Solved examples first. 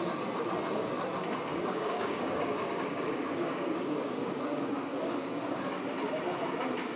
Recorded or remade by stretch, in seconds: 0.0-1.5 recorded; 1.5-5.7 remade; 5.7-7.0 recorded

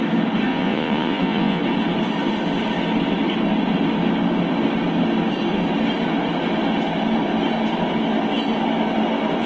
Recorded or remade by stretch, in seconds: 0.0-0.5 recorded; 0.5-1.6 remade; 1.6-9.5 recorded